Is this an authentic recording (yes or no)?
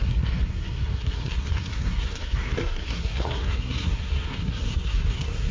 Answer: no